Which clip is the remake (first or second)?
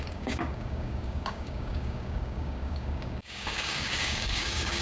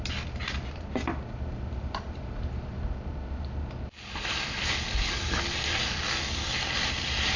first